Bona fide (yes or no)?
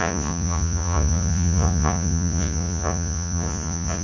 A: no